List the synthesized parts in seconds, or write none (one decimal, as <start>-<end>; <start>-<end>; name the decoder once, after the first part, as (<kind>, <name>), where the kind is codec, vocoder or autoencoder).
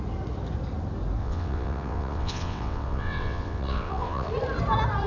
1.2-4.3 (vocoder, WaveNeXt)